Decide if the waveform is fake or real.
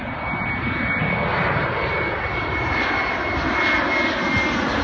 real